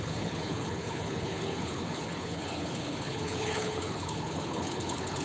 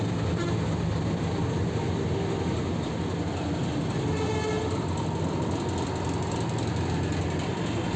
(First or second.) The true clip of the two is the second